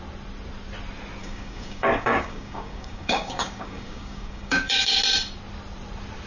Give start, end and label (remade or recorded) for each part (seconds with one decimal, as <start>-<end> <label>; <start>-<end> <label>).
0.0-1.2 recorded; 1.2-5.0 remade; 5.0-6.3 recorded